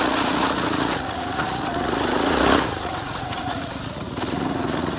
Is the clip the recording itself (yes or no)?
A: no